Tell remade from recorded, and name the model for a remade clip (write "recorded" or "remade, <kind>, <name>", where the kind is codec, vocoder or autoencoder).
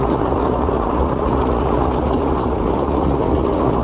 remade, vocoder, Vocos